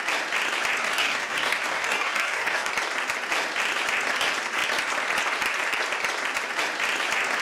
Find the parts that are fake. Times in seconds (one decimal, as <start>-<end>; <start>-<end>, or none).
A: 0.8-2.7